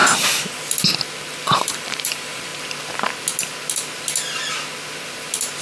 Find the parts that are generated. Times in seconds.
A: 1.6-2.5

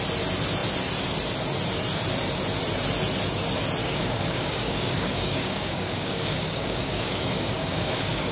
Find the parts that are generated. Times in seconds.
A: 3.8-8.3

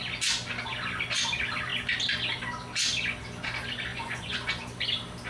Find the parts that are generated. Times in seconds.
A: 3.9-4.5

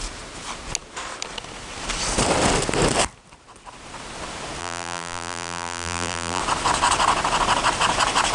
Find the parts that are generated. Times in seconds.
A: 4.6-6.4

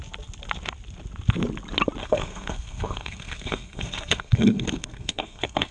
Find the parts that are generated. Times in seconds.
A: 2.0-5.7

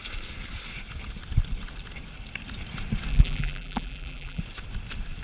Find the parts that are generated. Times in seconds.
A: 3.1-4.4

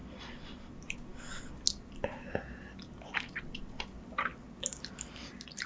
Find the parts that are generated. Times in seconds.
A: none

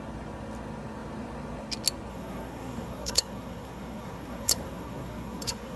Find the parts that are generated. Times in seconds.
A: 2.1-5.8